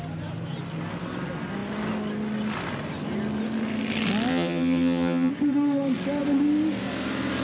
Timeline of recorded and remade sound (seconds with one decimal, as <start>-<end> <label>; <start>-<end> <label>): 0.0-4.3 recorded; 4.3-5.3 remade; 5.3-7.4 recorded